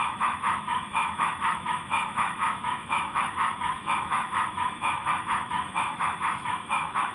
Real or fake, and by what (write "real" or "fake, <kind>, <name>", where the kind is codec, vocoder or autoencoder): fake, autoencoder, DAC-VAE